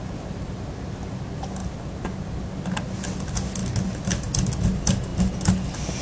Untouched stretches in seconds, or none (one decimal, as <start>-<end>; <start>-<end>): 0.0-1.6; 2.3-6.0